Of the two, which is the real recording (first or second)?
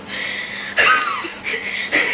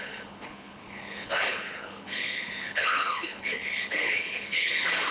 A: first